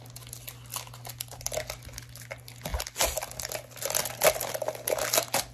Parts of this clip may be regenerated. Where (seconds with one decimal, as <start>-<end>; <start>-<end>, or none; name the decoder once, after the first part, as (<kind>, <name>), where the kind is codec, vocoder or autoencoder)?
none